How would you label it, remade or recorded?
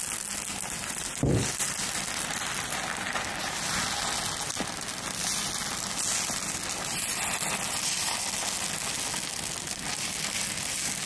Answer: recorded